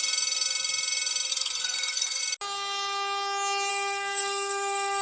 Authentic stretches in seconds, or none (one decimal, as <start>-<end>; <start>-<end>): 0.0-1.3; 2.2-3.7